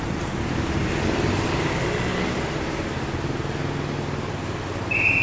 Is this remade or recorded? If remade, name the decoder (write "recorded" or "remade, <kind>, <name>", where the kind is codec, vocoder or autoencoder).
recorded